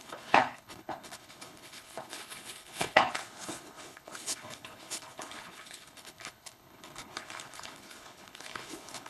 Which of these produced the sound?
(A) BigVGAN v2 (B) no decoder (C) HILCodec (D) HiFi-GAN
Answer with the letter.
C